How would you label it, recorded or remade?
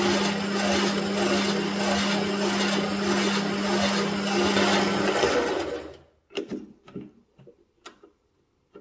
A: recorded